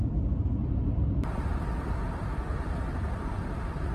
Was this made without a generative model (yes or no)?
no